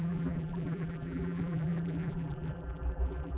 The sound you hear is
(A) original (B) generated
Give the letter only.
B